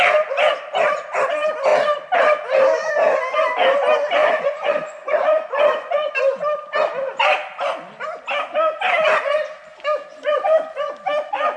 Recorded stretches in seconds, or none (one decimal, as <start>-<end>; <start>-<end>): 0.0-4.2; 6.1-10.1; 10.9-11.6